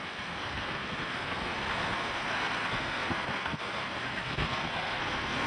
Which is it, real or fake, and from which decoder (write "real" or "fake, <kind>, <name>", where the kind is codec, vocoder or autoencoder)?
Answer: fake, codec, SNAC